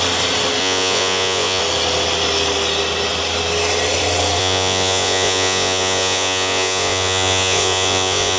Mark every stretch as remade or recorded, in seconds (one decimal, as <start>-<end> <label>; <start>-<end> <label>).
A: 0.0-0.6 recorded; 0.6-1.6 remade; 1.6-4.4 recorded; 4.4-8.4 remade

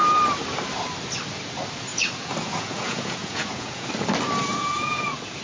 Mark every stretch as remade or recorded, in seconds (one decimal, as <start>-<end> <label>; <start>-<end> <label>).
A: 0.0-1.9 recorded; 1.9-3.9 remade; 3.9-4.5 recorded; 4.5-5.4 remade